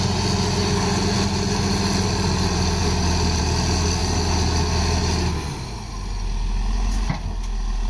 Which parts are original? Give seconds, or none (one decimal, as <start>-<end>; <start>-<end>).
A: 0.0-7.9